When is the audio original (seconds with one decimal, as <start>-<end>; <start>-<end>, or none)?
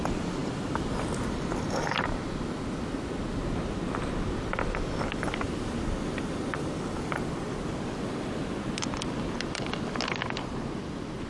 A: 0.0-11.3